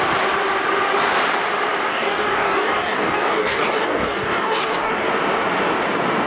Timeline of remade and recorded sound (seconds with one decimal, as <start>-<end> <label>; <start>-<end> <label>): 0.0-1.9 recorded; 1.9-5.1 remade; 5.1-6.3 recorded